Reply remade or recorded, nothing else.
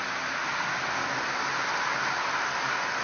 recorded